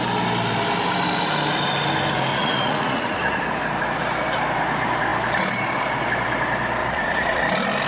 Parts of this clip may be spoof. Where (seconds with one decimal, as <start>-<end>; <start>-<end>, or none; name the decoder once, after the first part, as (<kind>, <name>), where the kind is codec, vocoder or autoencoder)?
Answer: 2.3-3.4 (vocoder, Vocos); 6.8-7.4